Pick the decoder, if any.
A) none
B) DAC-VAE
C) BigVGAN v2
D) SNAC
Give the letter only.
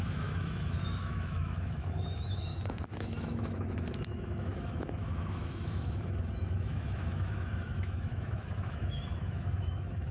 B